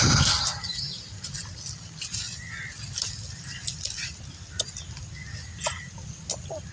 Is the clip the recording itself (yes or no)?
yes